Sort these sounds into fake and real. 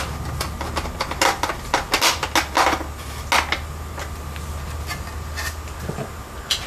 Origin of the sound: real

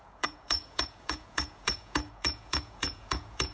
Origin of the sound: fake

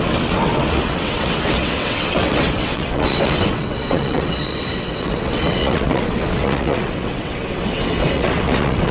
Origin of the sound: fake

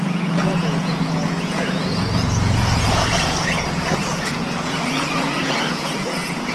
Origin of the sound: fake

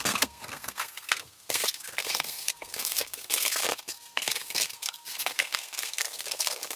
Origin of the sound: fake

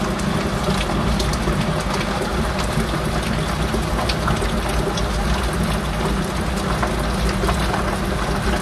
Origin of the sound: real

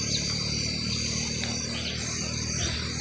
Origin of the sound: real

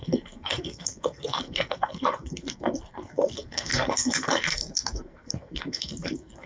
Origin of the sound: fake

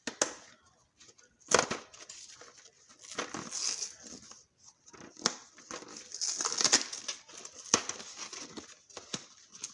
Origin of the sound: real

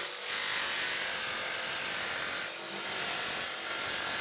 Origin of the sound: real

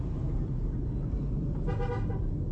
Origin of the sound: real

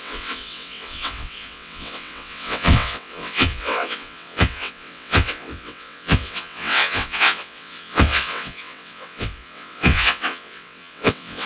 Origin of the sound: fake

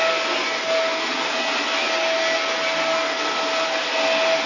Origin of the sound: real